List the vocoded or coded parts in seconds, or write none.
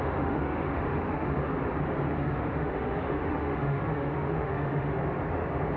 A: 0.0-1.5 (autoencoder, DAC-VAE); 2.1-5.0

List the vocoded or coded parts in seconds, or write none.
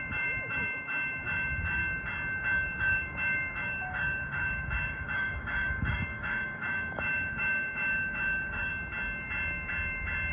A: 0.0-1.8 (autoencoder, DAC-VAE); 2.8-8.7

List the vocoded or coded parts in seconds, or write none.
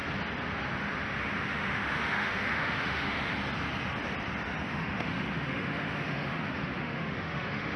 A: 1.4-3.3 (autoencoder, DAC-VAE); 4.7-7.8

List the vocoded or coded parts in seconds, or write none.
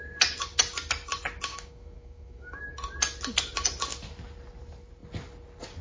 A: 1.5-2.6 (autoencoder, DAC-VAE)